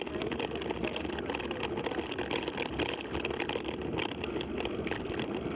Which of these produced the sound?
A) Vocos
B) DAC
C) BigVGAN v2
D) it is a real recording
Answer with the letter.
C